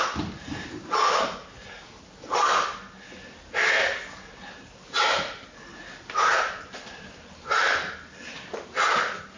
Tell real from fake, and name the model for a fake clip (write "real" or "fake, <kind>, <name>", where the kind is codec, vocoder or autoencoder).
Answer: real